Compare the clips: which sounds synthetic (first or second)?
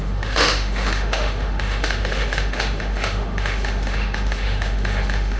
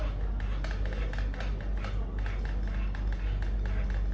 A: first